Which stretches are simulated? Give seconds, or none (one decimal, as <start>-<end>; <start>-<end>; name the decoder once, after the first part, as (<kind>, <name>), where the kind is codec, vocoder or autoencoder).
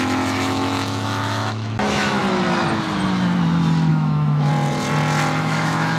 0.0-2.2 (autoencoder, DAC-VAE); 3.9-4.5; 5.4-6.0